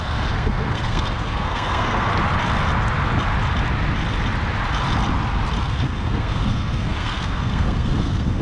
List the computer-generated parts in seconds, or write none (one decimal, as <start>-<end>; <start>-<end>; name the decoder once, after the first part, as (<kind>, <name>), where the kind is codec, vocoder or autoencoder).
0.0-2.1 (codec, SNAC); 5.6-8.4